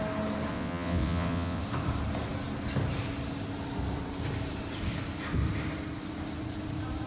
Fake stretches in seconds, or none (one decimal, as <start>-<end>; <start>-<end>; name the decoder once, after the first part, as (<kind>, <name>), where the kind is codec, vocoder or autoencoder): 0.5-1.6 (vocoder, WaveNeXt)